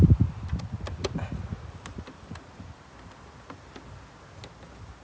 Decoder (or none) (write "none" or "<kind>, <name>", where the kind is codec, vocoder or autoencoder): none